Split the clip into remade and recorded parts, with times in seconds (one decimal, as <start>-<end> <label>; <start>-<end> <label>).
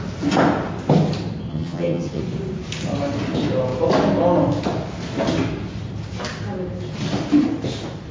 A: 0.0-1.5 recorded; 1.5-2.2 remade; 2.2-8.1 recorded